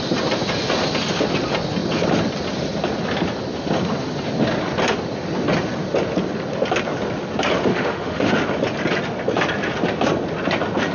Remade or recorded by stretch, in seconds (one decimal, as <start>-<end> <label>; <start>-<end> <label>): 0.0-7.7 recorded; 7.7-8.3 remade; 8.3-10.9 recorded